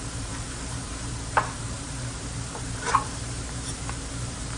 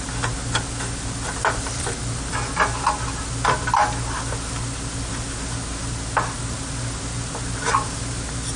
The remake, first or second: first